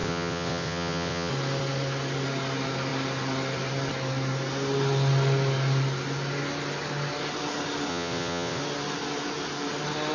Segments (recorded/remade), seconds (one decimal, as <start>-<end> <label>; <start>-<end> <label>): 0.0-1.3 remade; 1.3-7.9 recorded; 7.9-8.6 remade; 8.6-10.1 recorded